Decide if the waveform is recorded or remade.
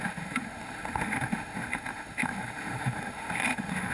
remade